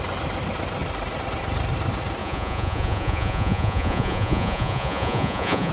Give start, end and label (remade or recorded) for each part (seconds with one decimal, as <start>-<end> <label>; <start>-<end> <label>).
0.0-2.2 recorded; 2.2-5.7 remade